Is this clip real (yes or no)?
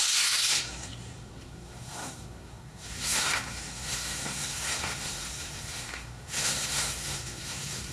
no